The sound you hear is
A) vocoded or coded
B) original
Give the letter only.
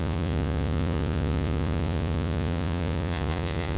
A